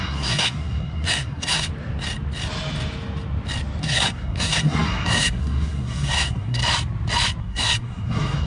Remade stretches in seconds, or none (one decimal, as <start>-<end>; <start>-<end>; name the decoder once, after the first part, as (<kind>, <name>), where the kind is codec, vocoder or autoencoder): 0.0-1.7 (codec, SNAC); 3.8-6.6; 7.4-8.5